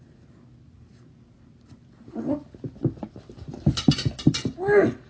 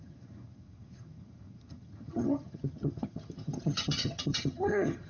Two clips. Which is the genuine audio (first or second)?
first